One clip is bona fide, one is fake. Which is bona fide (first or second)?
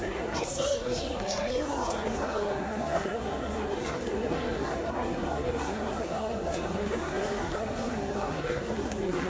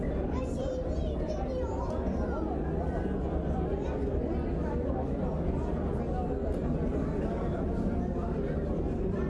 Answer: second